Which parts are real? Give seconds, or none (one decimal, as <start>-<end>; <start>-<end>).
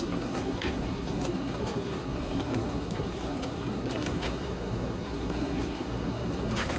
none